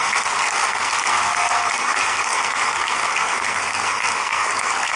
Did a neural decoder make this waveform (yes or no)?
yes